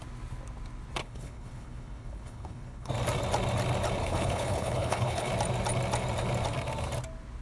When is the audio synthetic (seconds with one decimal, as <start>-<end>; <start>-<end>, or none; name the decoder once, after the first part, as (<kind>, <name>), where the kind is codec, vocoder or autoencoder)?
1.0-2.9 (codec, HILCodec); 4.0-5.3